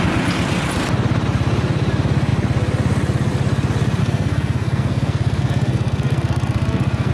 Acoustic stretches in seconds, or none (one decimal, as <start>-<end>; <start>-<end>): 0.0-4.0